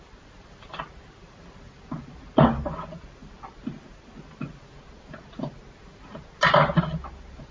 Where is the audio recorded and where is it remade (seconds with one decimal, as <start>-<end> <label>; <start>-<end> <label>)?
0.0-7.5 recorded